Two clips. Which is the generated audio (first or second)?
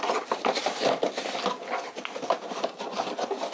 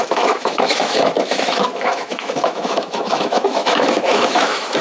second